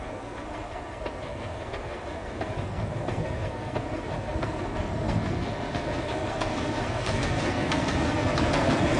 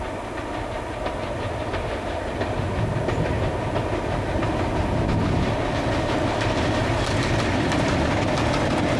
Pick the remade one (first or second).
first